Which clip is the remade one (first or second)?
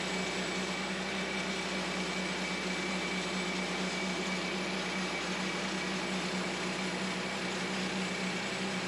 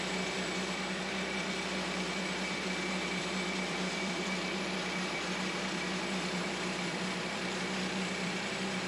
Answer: second